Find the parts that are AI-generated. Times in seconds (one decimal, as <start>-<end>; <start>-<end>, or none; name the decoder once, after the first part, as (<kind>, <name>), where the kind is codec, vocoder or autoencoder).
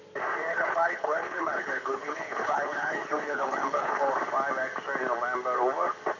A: 0.5-4.1 (codec, HILCodec)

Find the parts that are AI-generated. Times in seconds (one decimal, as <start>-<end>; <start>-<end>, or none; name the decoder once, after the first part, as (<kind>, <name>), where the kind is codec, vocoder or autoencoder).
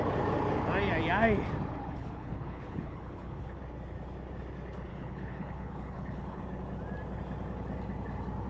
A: 1.8-3.6 (codec, HILCodec); 4.9-6.4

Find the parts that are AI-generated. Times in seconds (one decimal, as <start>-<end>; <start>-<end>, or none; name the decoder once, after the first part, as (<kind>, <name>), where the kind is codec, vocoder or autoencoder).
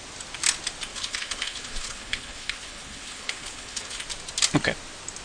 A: 0.9-4.0 (codec, HILCodec)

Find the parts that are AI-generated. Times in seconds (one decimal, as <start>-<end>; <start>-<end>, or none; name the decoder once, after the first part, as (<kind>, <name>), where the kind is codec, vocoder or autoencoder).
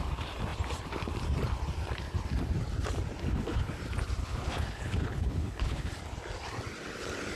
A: 3.2-3.7 (codec, HILCodec); 4.2-5.9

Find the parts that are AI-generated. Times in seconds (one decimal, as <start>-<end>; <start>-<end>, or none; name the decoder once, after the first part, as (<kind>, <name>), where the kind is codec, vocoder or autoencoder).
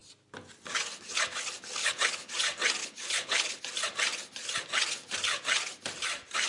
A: 1.8-2.3 (codec, HILCodec); 2.8-3.6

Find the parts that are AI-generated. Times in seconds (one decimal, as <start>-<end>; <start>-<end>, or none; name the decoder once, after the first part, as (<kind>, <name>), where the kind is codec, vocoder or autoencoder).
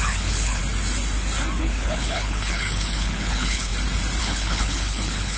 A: 0.0-0.6 (codec, HILCodec); 1.6-3.7; 4.2-5.4